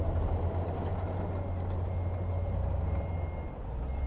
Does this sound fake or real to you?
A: real